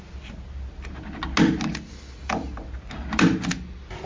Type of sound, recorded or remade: recorded